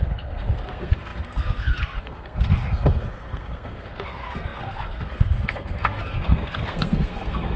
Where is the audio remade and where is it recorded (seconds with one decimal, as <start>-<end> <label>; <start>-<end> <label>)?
0.0-7.6 remade